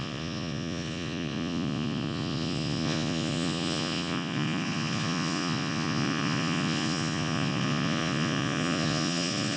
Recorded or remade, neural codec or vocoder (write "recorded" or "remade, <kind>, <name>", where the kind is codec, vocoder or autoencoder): remade, vocoder, Vocos